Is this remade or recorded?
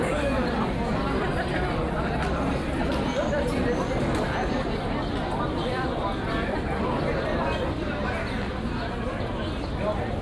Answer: recorded